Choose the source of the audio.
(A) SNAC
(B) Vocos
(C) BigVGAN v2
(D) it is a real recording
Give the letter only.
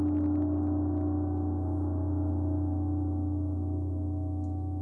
D